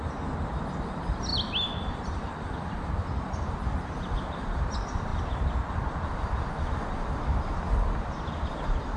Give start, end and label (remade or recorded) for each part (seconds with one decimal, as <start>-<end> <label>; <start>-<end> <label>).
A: 0.0-9.0 recorded